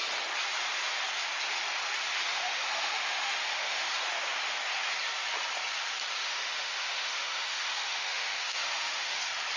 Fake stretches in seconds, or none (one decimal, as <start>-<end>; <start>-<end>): 2.3-3.9; 6.2-9.2